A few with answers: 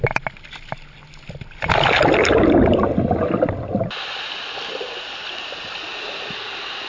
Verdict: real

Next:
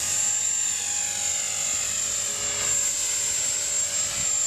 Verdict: real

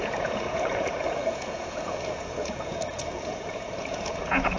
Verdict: fake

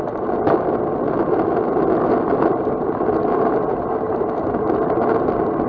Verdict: real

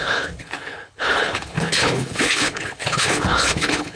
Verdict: fake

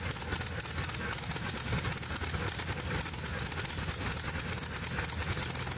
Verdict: real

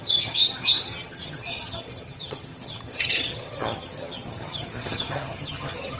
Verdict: fake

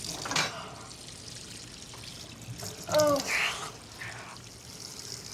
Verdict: real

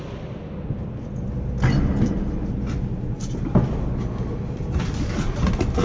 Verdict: real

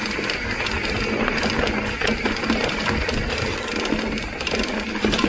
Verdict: real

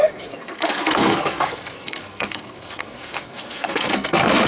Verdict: fake